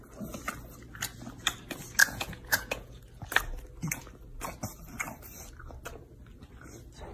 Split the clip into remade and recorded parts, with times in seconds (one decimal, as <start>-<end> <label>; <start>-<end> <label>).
0.0-2.0 recorded; 2.0-3.0 remade; 3.0-7.1 recorded